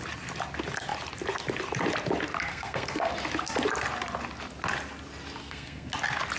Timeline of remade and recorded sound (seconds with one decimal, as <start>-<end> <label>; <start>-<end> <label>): 0.0-2.5 recorded; 2.5-3.1 remade; 3.1-5.4 recorded; 5.4-5.9 remade; 5.9-6.4 recorded